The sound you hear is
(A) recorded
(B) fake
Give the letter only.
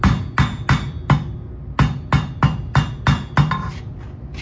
A